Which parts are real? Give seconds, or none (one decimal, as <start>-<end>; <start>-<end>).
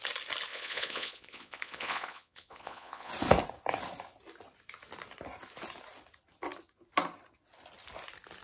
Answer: 0.0-0.5; 3.1-8.4